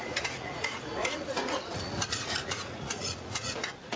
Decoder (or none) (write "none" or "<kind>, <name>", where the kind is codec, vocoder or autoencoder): vocoder, Vocos